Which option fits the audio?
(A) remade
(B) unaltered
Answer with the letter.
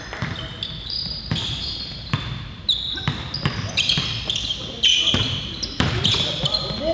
A